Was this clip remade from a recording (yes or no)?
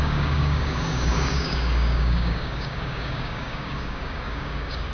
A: yes